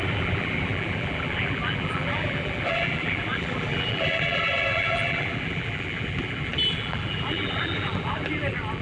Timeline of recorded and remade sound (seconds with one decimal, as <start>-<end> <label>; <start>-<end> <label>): 0.0-8.8 remade